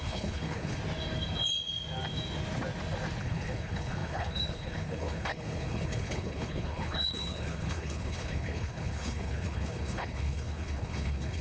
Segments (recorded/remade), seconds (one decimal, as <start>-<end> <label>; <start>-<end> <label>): 0.0-0.8 remade; 0.8-3.2 recorded; 3.2-11.4 remade